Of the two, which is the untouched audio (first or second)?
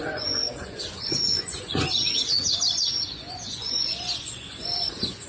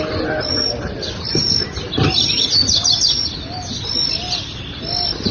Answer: second